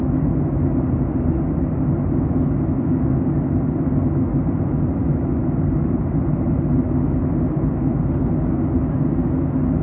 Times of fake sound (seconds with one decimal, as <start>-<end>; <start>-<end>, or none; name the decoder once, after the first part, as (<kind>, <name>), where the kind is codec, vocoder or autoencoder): none